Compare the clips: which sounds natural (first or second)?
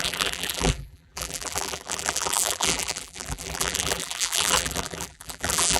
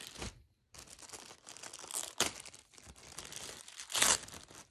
second